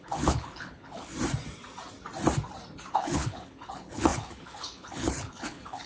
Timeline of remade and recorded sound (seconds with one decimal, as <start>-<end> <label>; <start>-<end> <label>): 0.0-1.1 remade; 1.1-2.9 recorded; 2.9-5.9 remade